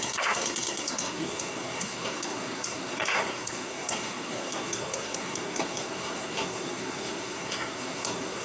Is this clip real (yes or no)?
no